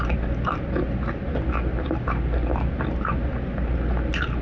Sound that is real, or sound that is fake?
real